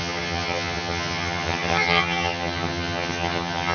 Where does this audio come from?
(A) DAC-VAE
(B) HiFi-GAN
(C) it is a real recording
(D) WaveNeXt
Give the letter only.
B